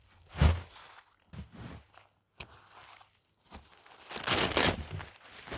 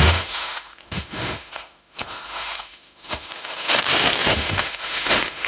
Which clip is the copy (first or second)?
second